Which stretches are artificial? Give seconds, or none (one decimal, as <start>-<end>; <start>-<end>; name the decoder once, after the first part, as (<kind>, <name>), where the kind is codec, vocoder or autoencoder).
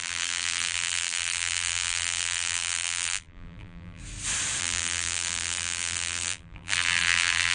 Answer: 0.0-4.0 (vocoder, BigVGAN v2); 4.6-7.5